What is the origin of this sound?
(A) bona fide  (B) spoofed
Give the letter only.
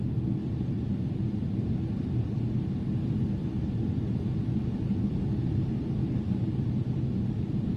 A